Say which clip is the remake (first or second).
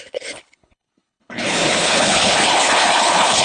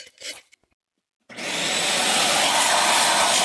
first